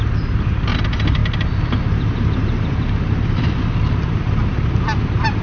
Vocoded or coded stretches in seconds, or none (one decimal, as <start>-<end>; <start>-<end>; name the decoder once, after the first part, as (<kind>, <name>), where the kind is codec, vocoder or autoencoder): none